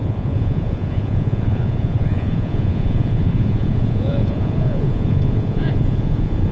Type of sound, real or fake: fake